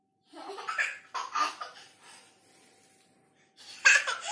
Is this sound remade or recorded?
recorded